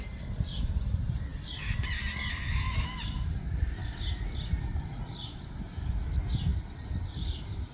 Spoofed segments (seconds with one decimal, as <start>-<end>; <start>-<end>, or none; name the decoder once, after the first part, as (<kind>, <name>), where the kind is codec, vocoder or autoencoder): none